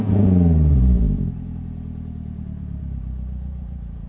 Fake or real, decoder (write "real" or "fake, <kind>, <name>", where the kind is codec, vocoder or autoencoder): fake, vocoder, Vocos